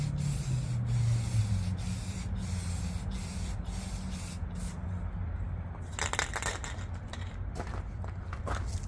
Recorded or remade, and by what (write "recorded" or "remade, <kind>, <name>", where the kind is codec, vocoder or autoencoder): recorded